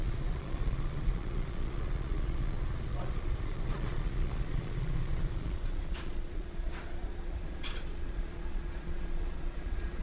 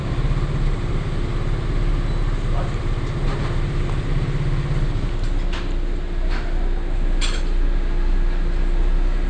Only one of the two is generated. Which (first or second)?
first